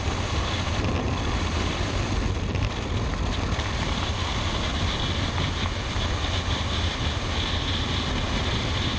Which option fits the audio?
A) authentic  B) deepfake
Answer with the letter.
A